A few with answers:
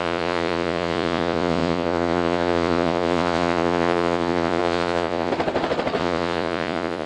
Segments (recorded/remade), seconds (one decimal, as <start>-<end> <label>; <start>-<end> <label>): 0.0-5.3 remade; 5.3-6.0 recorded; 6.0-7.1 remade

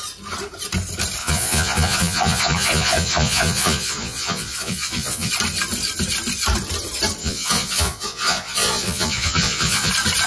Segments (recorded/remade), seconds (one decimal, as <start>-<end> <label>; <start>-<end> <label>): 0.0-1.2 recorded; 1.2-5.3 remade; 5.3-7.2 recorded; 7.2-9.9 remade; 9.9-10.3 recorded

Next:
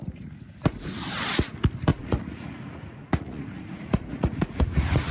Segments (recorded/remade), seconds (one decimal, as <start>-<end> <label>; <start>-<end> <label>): 0.0-1.9 recorded; 1.9-5.1 remade

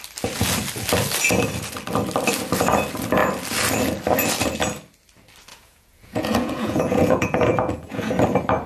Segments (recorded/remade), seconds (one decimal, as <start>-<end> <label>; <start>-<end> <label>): 0.0-5.5 recorded; 5.5-8.1 remade; 8.1-8.7 recorded

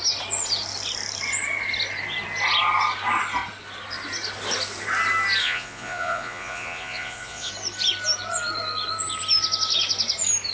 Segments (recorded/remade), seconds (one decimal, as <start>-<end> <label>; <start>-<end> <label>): 0.0-5.4 recorded; 5.4-7.5 remade; 7.5-10.5 recorded

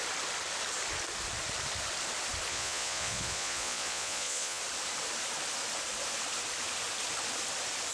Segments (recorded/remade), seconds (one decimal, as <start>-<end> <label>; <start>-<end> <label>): 0.0-2.5 recorded; 2.5-4.6 remade; 4.6-7.9 recorded

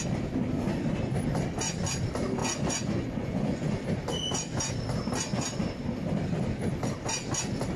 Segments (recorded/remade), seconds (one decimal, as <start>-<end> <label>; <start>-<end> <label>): 0.0-2.4 recorded; 2.4-3.7 remade; 3.7-7.8 recorded